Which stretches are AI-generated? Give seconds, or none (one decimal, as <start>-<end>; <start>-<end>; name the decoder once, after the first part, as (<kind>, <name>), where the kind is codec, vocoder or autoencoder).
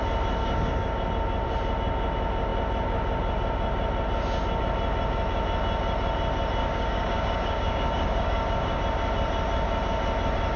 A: 0.4-1.1 (codec, DAC); 6.6-8.8